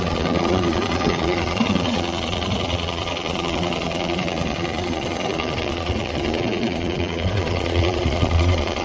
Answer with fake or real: fake